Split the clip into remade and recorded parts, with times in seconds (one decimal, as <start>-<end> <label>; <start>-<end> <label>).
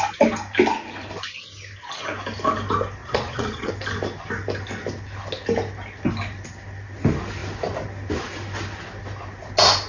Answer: 0.0-3.0 recorded; 3.0-3.7 remade; 3.7-9.9 recorded